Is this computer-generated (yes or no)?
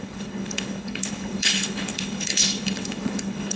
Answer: yes